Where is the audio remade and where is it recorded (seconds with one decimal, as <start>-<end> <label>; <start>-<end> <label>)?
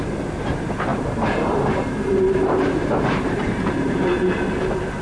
0.0-5.0 remade